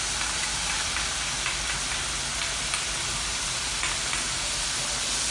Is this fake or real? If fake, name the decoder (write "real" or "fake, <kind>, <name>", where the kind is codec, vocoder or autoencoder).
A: real